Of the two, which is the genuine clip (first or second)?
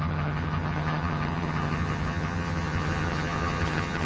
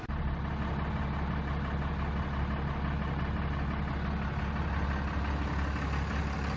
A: second